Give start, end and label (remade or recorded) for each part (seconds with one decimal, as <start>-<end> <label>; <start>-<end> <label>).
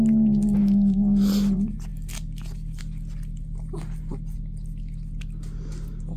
0.0-0.6 recorded; 0.6-1.3 remade; 1.3-6.2 recorded